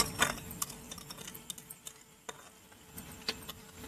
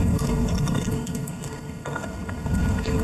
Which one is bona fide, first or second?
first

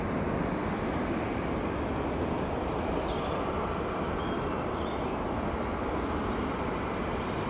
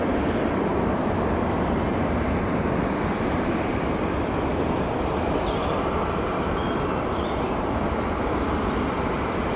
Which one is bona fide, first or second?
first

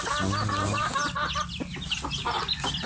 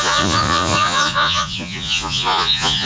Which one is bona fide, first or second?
first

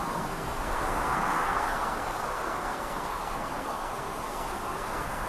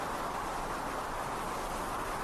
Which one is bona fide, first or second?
second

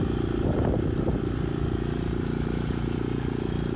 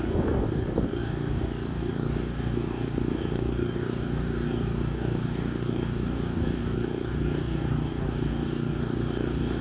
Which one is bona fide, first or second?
first